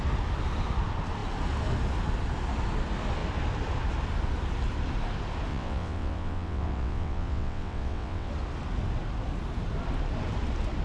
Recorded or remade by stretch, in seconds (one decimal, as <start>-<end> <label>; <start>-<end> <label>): 0.0-5.5 recorded; 5.5-8.3 remade; 8.3-10.8 recorded